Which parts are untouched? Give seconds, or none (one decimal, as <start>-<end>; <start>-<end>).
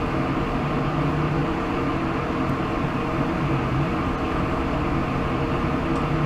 0.0-1.4; 1.9-6.3